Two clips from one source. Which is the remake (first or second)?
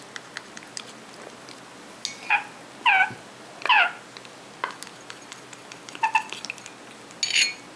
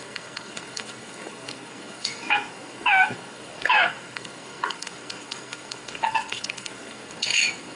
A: second